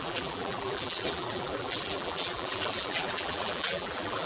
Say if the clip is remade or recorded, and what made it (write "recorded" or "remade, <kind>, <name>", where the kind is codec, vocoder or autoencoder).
remade, vocoder, BigVGAN v2